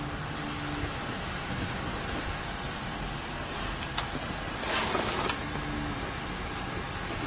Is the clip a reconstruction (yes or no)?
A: no